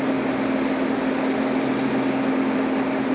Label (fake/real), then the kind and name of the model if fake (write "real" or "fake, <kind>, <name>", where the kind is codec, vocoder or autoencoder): real